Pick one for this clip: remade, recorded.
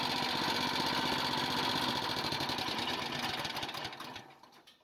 recorded